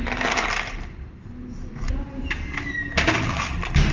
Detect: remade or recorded recorded